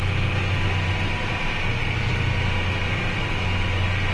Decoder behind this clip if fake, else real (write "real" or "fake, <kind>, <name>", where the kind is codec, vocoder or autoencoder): real